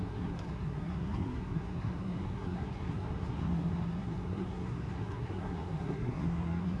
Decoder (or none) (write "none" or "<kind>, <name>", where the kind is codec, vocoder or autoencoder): codec, SNAC